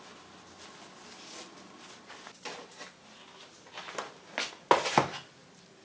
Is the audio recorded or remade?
recorded